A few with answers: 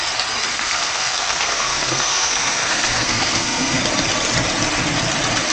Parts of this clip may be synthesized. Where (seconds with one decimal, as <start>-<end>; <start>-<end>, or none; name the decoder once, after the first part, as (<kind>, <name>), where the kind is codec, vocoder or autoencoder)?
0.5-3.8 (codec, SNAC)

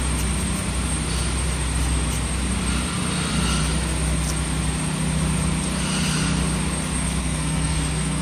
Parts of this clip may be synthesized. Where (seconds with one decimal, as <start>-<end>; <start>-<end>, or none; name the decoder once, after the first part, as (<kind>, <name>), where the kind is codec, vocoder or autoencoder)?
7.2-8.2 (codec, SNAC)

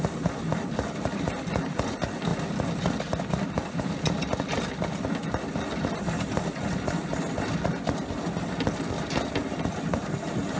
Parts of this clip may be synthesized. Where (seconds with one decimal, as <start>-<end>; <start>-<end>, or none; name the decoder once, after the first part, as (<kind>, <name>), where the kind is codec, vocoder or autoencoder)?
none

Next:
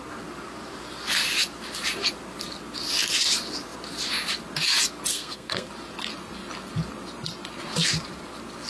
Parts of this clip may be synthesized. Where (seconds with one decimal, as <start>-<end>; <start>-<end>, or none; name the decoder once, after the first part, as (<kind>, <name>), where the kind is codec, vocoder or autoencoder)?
5.1-5.7 (codec, SNAC)

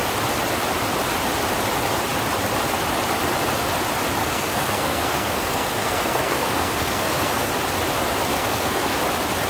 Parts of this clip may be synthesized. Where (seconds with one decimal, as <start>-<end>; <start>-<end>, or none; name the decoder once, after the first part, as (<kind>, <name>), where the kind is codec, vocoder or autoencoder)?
4.2-7.5 (codec, SNAC); 8.3-9.0

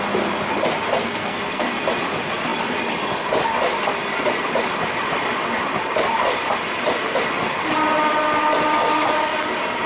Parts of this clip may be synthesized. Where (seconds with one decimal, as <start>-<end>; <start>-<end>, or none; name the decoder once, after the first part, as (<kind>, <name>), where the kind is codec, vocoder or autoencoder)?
1.0-1.7 (codec, SNAC)